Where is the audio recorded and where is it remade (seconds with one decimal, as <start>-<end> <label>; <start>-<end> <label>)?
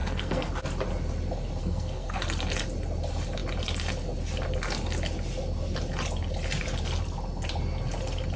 0.0-0.5 remade; 0.5-1.6 recorded; 1.6-2.2 remade; 2.2-8.4 recorded